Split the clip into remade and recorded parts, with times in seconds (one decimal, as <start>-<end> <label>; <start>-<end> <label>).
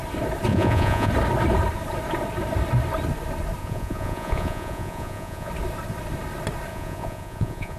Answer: 0.0-0.5 recorded; 0.5-1.1 remade; 1.1-3.6 recorded; 3.6-5.5 remade; 5.5-6.7 recorded; 6.7-7.8 remade